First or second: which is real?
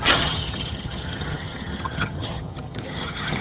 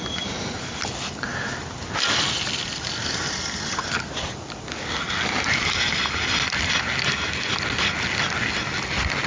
second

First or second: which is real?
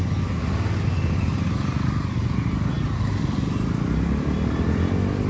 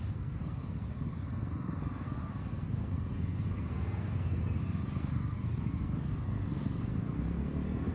first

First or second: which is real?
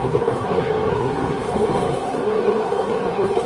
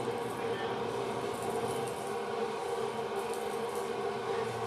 second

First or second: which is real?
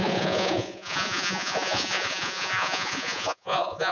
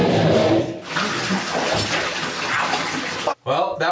second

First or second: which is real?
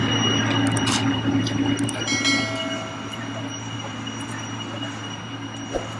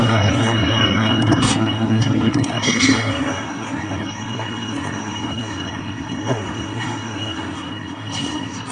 first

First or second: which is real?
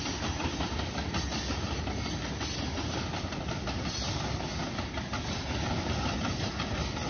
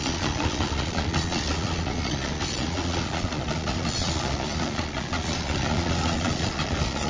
first